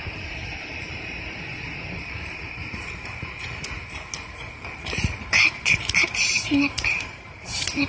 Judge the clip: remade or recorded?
remade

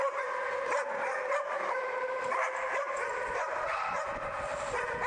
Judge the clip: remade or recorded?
remade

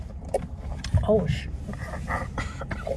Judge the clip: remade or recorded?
recorded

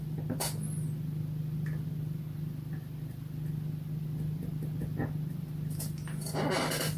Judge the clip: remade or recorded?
recorded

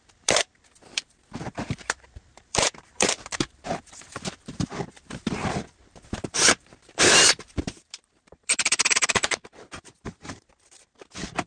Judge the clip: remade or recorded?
remade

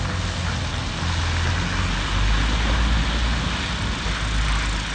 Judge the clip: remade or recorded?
recorded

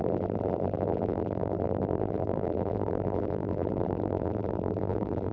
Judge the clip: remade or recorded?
remade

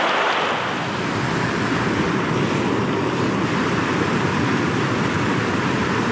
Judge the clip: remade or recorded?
remade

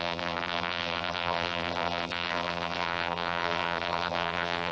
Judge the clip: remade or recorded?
remade